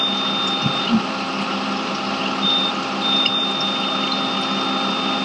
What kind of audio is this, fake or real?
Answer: real